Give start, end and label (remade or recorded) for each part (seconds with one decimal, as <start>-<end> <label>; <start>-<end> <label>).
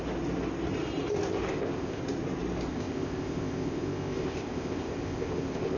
0.0-1.5 recorded; 1.5-2.0 remade; 2.0-2.7 recorded; 2.7-5.8 remade